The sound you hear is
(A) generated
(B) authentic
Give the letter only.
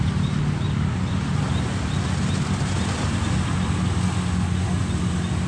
B